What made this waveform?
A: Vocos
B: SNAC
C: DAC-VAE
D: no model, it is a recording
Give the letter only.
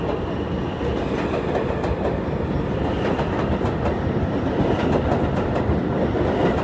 D